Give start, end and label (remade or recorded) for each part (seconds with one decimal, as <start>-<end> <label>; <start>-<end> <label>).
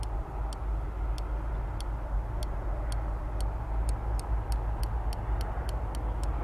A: 0.0-6.4 recorded